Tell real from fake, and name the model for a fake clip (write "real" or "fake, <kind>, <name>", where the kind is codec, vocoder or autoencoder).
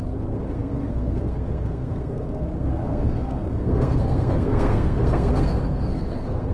fake, codec, SNAC